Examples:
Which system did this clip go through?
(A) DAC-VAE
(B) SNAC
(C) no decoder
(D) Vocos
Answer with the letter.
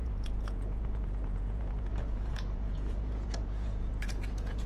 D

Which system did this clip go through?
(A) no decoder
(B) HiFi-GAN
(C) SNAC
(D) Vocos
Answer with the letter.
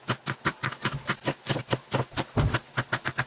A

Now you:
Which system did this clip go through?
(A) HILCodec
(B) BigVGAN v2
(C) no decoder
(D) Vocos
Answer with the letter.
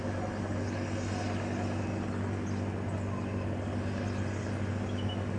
C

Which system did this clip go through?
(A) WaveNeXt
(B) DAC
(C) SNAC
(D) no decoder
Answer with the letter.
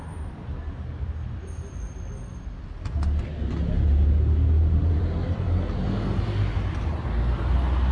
D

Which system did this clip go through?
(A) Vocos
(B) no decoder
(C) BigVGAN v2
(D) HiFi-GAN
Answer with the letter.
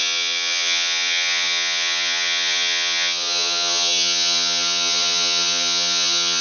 D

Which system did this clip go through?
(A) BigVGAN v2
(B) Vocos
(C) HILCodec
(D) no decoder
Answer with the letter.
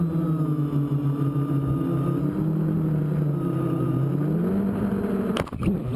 D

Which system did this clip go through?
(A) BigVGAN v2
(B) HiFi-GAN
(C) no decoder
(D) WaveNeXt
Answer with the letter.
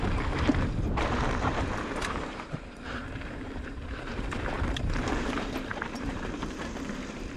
A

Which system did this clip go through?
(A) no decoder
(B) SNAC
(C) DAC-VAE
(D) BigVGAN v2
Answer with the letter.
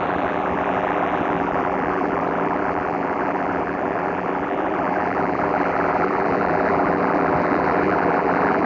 D